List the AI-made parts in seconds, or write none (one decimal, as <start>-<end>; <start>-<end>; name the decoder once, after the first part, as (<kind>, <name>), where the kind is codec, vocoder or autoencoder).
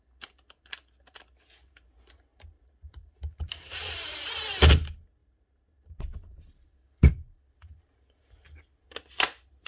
2.3-4.4 (vocoder, BigVGAN v2); 5.2-7.1